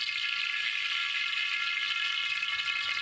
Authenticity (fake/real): real